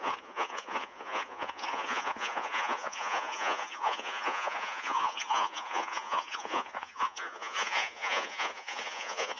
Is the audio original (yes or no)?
no